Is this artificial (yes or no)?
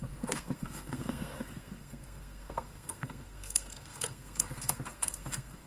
yes